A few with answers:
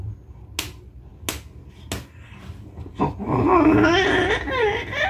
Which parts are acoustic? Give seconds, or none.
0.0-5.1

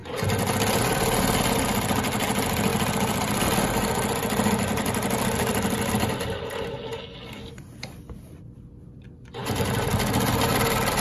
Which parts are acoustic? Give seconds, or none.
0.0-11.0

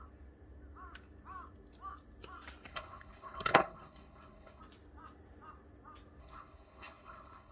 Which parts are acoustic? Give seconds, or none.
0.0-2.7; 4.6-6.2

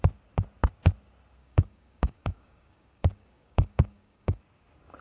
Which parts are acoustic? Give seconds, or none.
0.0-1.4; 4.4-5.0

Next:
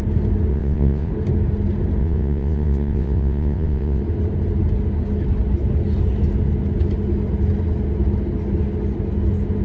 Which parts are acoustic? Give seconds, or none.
0.0-0.5; 1.1-2.0; 4.0-9.6